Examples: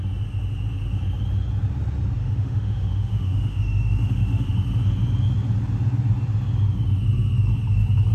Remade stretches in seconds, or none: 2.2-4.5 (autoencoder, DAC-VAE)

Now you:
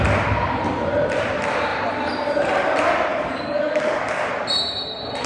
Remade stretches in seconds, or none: 3.1-4.3 (codec, DAC)